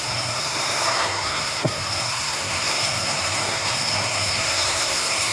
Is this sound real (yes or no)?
no